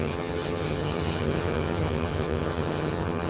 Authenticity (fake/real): fake